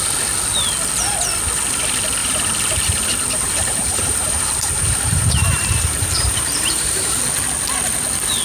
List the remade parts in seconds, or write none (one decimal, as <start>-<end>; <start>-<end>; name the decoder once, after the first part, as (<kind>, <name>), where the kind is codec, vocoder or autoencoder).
2.2-7.2 (vocoder, BigVGAN v2)